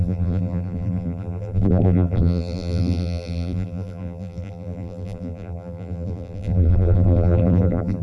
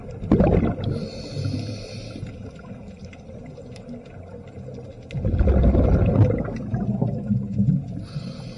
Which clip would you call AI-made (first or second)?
first